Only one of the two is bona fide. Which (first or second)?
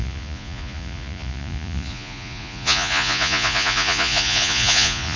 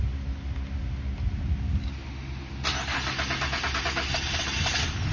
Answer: second